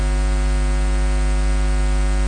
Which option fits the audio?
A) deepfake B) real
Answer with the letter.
B